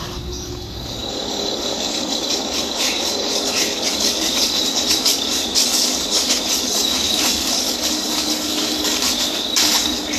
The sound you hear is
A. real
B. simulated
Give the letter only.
B